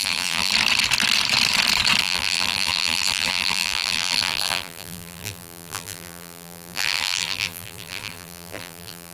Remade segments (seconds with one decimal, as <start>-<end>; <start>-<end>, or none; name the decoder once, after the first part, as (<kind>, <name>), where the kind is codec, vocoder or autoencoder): 0.0-0.5 (vocoder, BigVGAN v2); 2.0-9.1